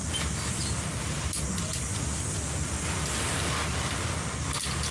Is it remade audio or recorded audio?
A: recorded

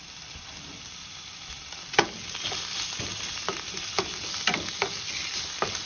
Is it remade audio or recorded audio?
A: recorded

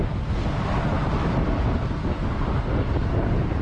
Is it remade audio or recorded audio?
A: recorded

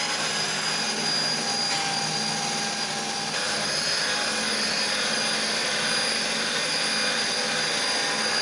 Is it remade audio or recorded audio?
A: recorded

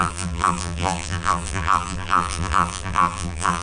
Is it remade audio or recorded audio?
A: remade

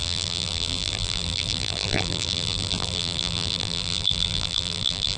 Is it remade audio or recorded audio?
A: remade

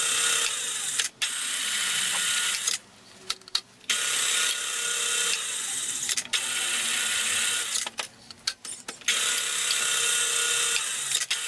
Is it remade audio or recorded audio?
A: recorded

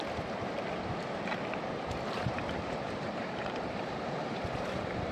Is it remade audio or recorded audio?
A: remade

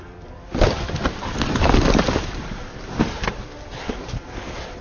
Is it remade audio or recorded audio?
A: remade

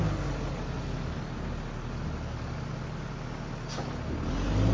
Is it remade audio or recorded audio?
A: recorded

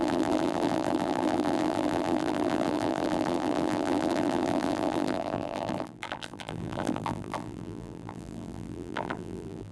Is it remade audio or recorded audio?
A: remade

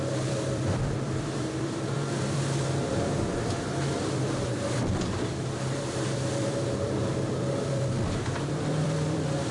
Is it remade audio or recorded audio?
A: remade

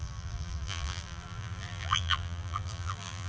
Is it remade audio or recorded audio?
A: remade